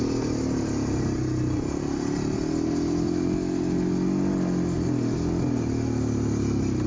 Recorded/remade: recorded